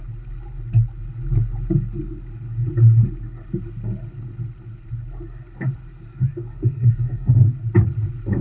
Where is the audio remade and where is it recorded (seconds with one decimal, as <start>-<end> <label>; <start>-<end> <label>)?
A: 0.0-6.5 recorded; 6.5-7.3 remade; 7.3-8.4 recorded